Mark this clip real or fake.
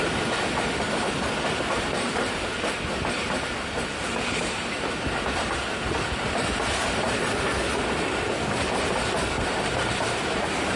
real